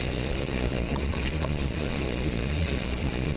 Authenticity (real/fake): fake